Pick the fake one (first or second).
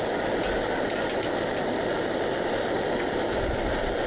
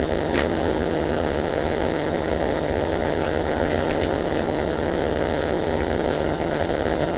second